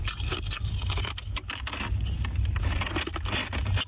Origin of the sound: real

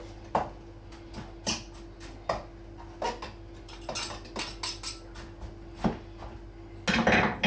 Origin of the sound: real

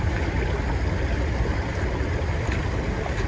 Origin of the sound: real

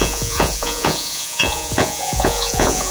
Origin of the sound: fake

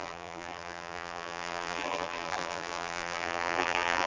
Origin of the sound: fake